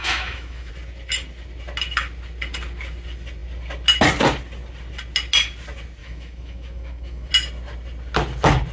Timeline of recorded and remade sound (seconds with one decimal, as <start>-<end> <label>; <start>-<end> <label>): 0.0-0.7 remade; 0.7-6.0 recorded; 6.0-7.3 remade; 7.3-8.7 recorded